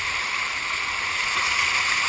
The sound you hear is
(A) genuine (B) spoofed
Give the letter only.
A